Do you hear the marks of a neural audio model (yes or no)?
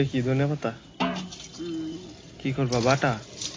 no